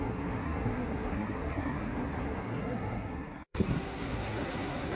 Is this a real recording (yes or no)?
no